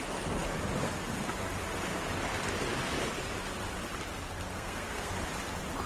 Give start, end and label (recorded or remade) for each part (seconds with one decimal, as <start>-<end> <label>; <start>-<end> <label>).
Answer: 0.0-4.5 recorded; 4.5-5.1 remade; 5.1-5.9 recorded